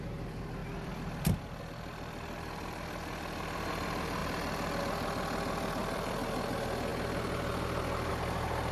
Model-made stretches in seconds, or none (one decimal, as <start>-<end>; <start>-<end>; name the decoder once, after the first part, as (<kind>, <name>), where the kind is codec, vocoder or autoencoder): 0.6-1.6 (vocoder, BigVGAN v2); 4.2-4.8; 5.8-6.5